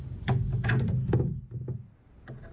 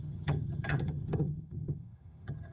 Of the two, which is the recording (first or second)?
first